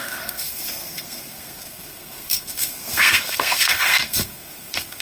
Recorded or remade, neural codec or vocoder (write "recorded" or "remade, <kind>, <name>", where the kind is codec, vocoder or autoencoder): remade, codec, SNAC